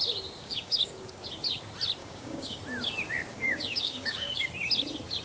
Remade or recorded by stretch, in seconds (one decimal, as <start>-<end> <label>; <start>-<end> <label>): 0.0-0.4 recorded; 0.4-1.2 remade; 1.2-2.0 recorded; 2.0-2.6 remade; 2.6-3.3 recorded; 3.3-4.5 remade; 4.5-5.2 recorded